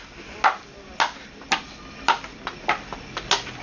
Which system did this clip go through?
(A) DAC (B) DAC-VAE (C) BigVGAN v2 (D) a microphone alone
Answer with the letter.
D